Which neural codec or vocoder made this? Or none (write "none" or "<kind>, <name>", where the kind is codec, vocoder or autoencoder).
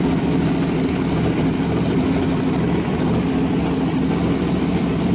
none